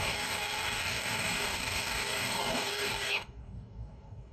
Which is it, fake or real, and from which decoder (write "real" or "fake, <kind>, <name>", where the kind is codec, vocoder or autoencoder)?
fake, codec, DAC